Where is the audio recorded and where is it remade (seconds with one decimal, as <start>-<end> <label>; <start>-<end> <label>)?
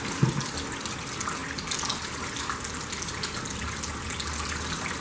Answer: 0.0-5.0 recorded